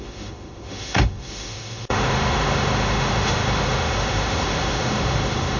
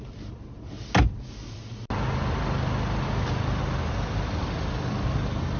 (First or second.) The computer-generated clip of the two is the first